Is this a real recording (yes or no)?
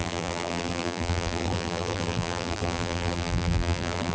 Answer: no